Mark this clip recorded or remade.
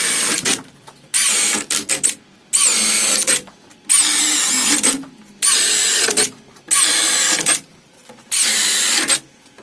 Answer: recorded